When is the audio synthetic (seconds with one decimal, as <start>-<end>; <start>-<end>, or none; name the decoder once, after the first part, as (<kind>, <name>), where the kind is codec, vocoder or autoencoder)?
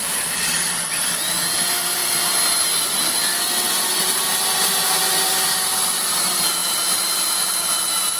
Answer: 0.0-1.3 (vocoder, BigVGAN v2); 2.0-3.0; 4.3-5.6